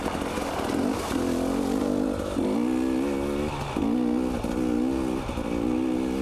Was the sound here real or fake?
real